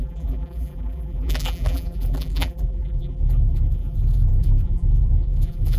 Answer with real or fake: fake